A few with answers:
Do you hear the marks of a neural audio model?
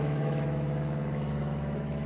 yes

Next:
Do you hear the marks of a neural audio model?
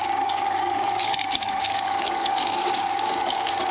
yes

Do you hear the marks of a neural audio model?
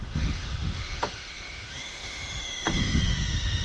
yes